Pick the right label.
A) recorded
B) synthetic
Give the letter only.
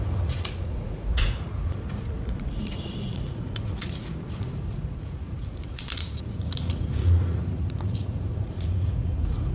B